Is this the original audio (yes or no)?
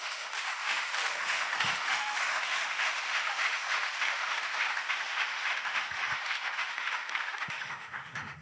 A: no